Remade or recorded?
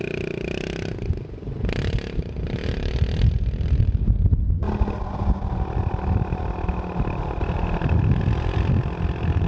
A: recorded